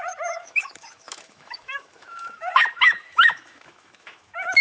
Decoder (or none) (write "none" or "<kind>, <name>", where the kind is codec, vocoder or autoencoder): autoencoder, DAC-VAE